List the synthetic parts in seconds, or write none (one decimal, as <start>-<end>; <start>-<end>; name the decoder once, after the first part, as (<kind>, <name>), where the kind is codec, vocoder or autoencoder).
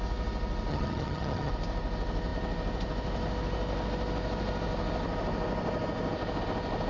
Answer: 0.7-1.5 (vocoder, HiFi-GAN)